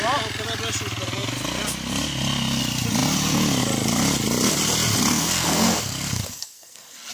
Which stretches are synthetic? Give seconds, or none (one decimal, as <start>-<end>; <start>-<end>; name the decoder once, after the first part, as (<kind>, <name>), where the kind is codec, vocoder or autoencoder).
5.1-7.1 (codec, SNAC)

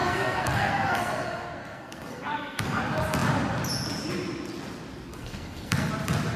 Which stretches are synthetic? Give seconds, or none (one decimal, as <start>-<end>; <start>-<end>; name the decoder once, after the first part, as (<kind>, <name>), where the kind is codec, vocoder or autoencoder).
0.0-2.8 (codec, SNAC); 5.1-5.9

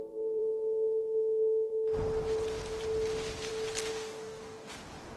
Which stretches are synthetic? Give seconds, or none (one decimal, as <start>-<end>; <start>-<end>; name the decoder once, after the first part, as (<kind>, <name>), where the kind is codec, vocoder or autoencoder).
3.9-4.7 (codec, DAC)

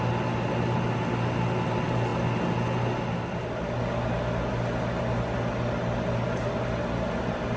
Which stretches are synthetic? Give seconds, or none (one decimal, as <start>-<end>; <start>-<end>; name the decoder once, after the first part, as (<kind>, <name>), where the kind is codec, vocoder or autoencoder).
none

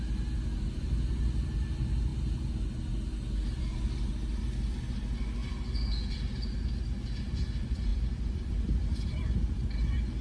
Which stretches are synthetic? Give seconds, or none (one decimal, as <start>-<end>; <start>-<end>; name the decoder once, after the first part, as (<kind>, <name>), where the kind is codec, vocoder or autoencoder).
7.9-8.5 (vocoder, BigVGAN v2)